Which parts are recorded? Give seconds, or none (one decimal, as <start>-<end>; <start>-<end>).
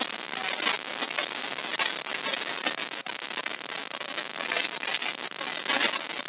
0.0-6.3